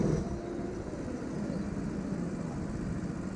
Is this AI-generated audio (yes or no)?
no